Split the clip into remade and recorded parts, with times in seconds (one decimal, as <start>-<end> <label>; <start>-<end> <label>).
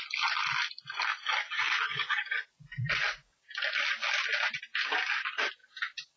0.0-6.2 recorded